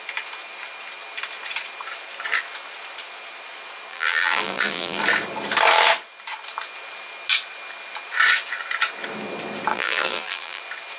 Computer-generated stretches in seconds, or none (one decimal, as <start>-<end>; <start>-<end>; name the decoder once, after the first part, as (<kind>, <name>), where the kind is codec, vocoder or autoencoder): 3.9-5.0 (vocoder, BigVGAN v2); 9.7-10.6